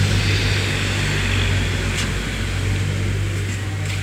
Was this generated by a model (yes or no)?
no